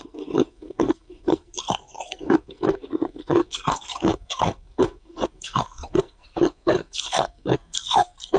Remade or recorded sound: remade